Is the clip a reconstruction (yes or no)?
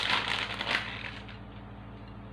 no